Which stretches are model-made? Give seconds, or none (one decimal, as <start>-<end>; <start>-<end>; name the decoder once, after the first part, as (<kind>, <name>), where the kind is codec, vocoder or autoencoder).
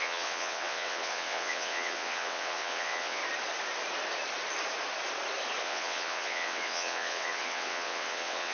0.0-3.2 (vocoder, WaveNeXt); 5.6-8.5